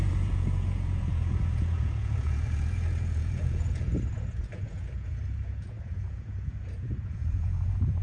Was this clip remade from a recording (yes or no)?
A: yes